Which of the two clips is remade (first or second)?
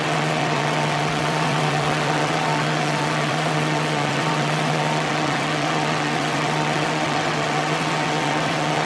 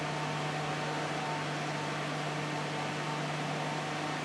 first